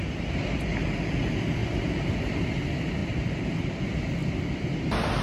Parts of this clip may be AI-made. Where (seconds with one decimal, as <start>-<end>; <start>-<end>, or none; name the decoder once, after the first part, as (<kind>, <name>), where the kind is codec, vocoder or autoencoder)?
1.6-2.4 (vocoder, BigVGAN v2); 3.0-3.8